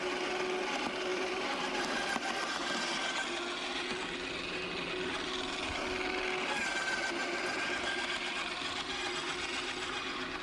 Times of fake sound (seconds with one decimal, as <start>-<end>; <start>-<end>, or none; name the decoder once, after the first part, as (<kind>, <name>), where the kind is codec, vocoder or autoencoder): 1.1-2.4 (vocoder, BigVGAN v2); 7.2-8.3